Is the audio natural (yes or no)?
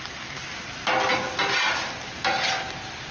yes